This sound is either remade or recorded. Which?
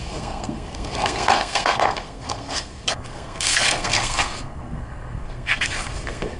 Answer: remade